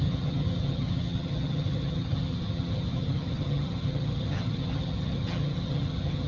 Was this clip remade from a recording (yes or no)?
yes